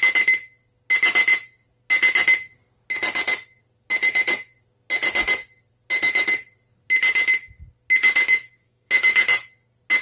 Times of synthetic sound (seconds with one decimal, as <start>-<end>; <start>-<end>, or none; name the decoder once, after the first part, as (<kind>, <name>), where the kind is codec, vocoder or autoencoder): 8.0-9.4 (codec, DAC)